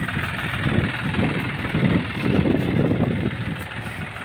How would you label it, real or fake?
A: fake